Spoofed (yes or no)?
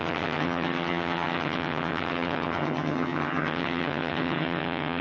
yes